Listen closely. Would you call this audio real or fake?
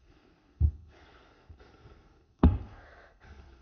fake